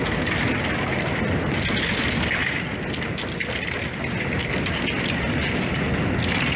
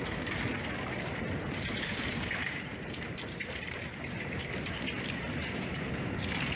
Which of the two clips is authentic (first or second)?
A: first